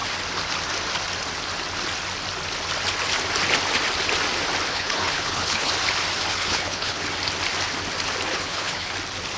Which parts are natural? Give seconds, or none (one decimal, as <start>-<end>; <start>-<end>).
0.0-4.7; 5.7-6.3; 7.0-8.3; 8.9-9.4